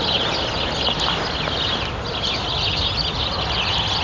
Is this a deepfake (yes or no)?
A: no